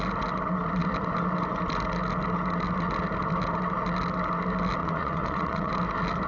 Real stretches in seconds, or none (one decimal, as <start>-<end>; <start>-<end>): 0.0-4.8; 5.7-6.3